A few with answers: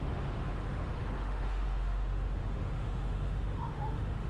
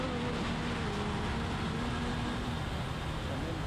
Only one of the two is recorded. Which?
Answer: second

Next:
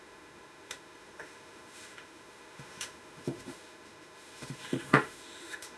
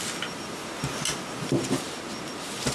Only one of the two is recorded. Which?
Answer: second